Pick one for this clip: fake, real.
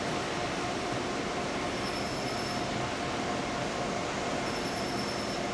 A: real